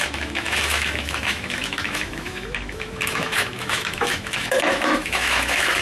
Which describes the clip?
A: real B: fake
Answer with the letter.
B